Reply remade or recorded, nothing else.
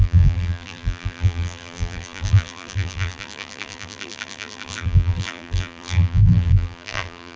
remade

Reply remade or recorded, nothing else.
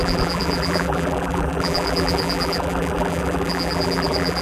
remade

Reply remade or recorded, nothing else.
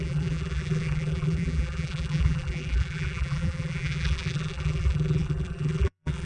remade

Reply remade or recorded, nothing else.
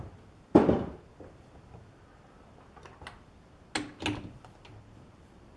recorded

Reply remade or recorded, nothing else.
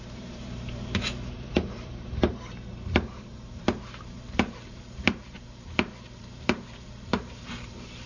remade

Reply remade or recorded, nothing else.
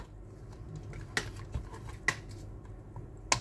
recorded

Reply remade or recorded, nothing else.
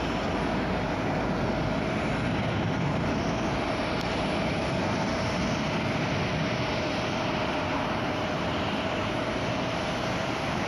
recorded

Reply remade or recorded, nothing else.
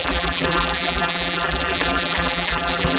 remade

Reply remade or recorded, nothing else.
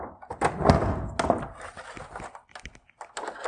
recorded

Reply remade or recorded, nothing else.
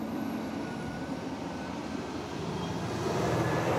remade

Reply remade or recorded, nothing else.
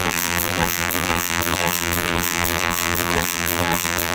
remade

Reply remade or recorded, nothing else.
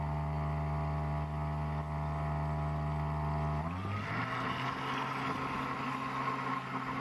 recorded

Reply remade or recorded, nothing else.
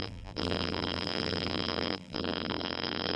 remade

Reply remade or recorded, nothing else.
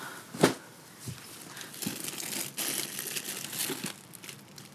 recorded